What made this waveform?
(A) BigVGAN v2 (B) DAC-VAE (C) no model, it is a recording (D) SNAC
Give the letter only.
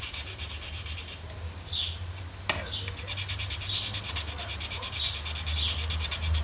C